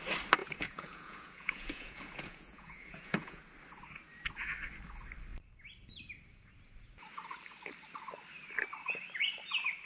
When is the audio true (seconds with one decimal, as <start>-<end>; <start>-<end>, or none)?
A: 0.0-0.4; 3.4-9.9